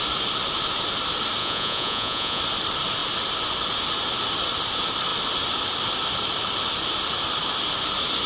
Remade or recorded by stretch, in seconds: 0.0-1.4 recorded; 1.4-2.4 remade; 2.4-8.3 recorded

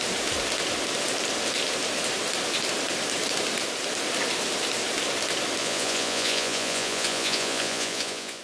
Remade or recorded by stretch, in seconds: 0.0-5.6 recorded; 5.6-8.4 remade

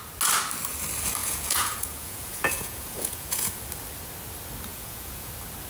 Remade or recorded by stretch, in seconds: 0.0-1.2 recorded; 1.2-3.6 remade; 3.6-4.7 recorded; 4.7-5.3 remade; 5.3-5.7 recorded

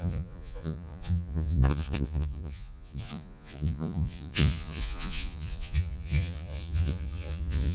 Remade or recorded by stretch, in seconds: 0.0-7.7 remade

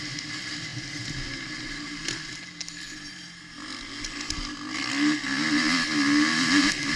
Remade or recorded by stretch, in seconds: 0.0-7.0 recorded